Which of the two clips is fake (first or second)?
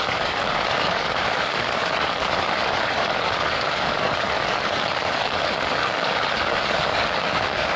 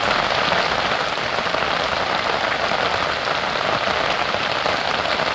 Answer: first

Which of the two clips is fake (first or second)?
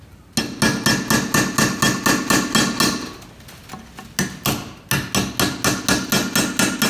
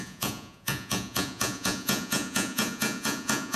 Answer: second